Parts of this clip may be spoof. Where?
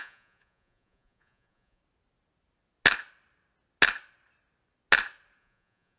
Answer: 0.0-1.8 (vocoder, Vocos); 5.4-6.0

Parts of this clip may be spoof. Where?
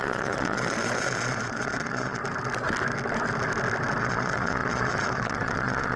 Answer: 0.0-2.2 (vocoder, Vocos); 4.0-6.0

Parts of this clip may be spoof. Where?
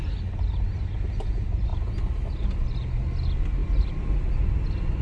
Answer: none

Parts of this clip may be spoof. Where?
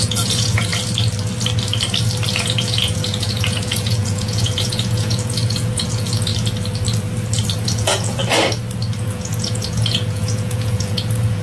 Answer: 0.0-0.7 (vocoder, Vocos); 2.3-6.3; 7.6-8.2; 9.0-11.4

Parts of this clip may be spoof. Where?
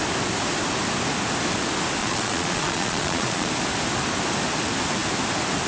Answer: 2.0-3.5 (vocoder, Vocos)